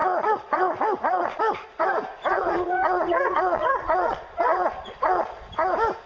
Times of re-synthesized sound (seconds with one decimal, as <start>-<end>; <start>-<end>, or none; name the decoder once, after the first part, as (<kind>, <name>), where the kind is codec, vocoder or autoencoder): 0.0-1.4 (vocoder, Vocos); 2.3-5.5